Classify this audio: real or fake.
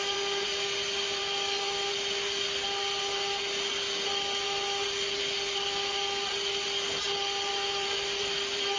real